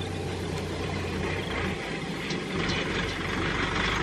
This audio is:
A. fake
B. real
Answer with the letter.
B